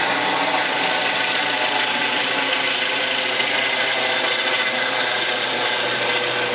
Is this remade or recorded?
recorded